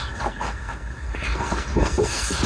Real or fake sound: fake